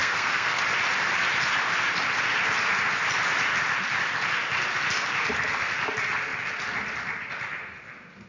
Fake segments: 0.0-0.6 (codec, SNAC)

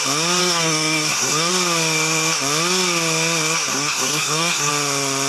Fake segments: 0.4-1.5 (codec, SNAC); 3.7-4.7

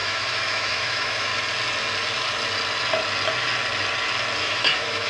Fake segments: 0.0-1.3 (autoencoder, DAC-VAE); 4.4-5.1